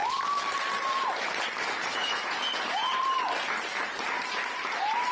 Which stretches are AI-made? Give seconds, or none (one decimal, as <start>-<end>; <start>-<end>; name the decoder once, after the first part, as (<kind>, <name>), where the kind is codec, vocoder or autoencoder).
1.8-2.9 (vocoder, Vocos)